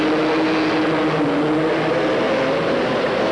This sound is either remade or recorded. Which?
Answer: recorded